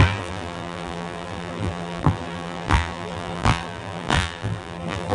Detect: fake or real fake